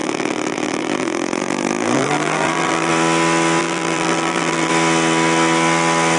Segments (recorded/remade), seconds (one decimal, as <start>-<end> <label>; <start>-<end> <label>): 0.0-2.9 remade; 2.9-3.6 recorded; 3.6-4.7 remade; 4.7-6.2 recorded